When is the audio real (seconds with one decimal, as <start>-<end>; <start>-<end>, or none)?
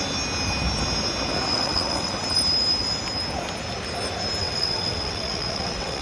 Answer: 0.0-1.6; 2.1-4.4